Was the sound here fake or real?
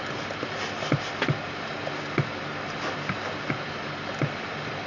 real